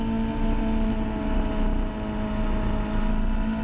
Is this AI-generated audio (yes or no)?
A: no